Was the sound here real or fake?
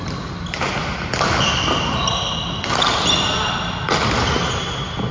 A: real